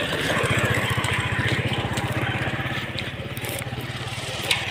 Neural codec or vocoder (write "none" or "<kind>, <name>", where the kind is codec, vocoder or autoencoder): vocoder, BigVGAN v2